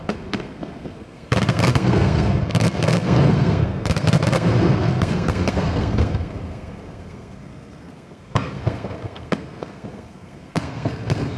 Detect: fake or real fake